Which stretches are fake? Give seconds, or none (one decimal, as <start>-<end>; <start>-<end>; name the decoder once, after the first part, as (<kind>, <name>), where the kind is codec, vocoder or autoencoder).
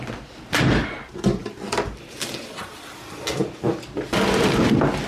none